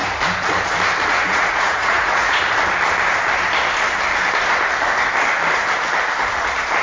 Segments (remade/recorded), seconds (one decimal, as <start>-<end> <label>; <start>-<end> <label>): 0.0-1.1 recorded; 1.1-2.4 remade; 2.4-6.8 recorded